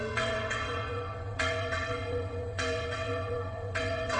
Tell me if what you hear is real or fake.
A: fake